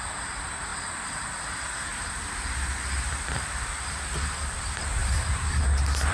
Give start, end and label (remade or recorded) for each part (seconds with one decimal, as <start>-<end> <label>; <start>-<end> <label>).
0.0-1.9 recorded; 1.9-4.6 remade; 4.6-5.0 recorded; 5.0-5.6 remade; 5.6-6.1 recorded